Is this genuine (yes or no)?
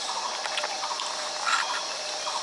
yes